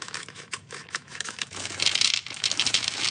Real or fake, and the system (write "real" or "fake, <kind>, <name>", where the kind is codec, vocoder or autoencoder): fake, autoencoder, DAC-VAE